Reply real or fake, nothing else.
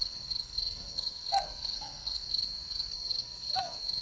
fake